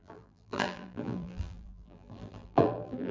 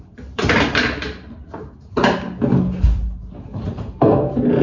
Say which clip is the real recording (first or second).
second